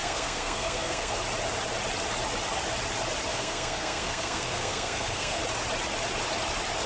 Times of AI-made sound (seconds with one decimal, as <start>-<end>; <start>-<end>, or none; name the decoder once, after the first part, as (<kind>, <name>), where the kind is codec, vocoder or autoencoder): 0.0-1.2 (codec, SNAC); 3.3-5.4

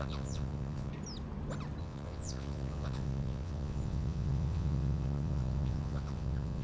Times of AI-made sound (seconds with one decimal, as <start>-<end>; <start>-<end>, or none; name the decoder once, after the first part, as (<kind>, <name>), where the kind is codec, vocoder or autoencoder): 0.0-0.9 (vocoder, WaveNeXt); 1.8-6.6

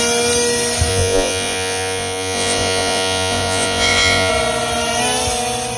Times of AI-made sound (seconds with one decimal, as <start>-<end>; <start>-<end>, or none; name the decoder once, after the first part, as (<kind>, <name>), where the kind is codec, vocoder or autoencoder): 0.9-4.3 (vocoder, Vocos)

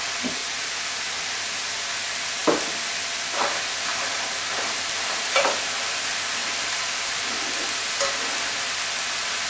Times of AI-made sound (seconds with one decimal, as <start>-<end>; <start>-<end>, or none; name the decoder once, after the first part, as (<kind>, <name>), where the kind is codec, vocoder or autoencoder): 0.4-1.6 (vocoder, BigVGAN v2); 3.9-5.4; 6.4-7.4

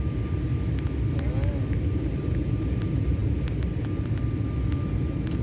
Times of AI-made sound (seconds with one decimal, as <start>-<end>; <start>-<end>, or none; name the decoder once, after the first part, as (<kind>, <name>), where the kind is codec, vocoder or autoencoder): none

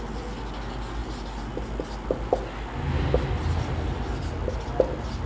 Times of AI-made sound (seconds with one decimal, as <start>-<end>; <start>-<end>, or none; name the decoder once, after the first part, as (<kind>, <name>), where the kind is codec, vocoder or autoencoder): none

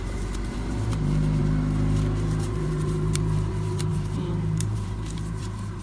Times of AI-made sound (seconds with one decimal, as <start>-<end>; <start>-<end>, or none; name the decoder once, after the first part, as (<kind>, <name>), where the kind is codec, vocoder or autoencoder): 0.0-5.8 (vocoder, BigVGAN v2)

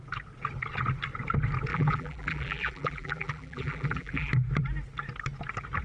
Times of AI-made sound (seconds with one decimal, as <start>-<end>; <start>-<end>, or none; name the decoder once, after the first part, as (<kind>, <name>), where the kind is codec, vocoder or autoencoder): 1.7-4.3 (vocoder, BigVGAN v2)